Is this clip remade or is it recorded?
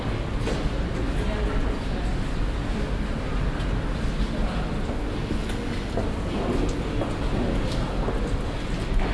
recorded